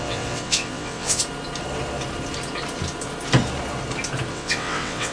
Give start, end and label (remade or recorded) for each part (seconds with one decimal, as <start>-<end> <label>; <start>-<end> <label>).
0.0-1.2 remade; 1.2-4.3 recorded; 4.3-5.1 remade